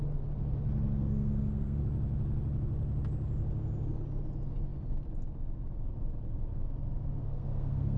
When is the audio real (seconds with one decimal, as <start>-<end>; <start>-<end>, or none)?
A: 0.0-1.0; 1.8-7.2